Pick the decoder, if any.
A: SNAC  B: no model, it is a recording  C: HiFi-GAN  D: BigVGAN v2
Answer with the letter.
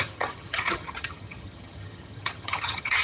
C